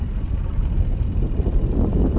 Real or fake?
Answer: real